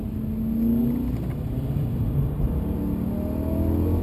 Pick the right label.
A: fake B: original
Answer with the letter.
B